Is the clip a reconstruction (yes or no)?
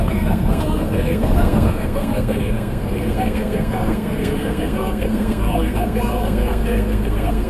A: yes